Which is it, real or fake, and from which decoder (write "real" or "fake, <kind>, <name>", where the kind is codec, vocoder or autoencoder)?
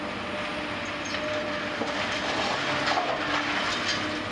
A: real